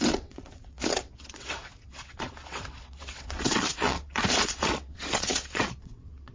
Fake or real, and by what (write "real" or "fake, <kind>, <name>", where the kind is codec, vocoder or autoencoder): fake, vocoder, WaveNeXt